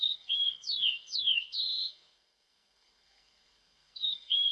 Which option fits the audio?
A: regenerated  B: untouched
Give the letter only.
A